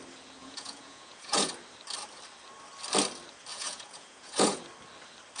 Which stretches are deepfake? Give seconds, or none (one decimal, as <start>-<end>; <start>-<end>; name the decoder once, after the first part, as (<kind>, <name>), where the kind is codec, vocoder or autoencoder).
0.4-1.5 (vocoder, Vocos); 3.5-4.6